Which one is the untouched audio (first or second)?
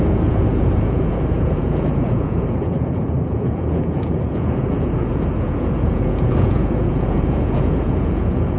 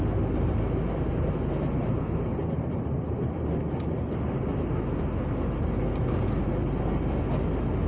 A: second